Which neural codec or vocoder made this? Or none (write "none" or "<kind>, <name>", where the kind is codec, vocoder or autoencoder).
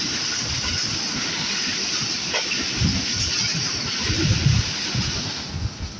none